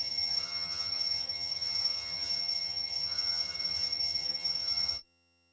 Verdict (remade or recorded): remade